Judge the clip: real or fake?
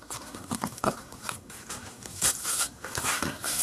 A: fake